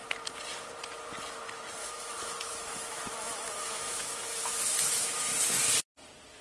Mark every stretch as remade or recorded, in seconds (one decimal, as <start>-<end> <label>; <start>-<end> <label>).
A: 0.0-1.8 recorded; 1.8-5.6 remade; 5.6-6.4 recorded